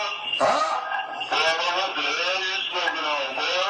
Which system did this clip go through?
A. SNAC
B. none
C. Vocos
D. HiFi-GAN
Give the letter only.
B